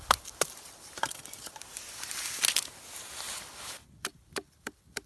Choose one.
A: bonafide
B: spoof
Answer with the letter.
B